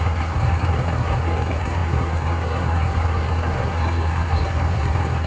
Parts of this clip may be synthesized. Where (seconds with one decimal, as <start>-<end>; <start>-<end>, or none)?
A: 0.0-5.3